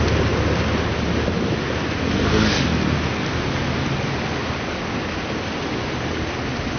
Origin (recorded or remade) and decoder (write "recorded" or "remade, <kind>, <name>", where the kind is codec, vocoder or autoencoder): recorded